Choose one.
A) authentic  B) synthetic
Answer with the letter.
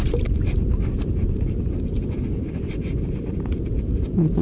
B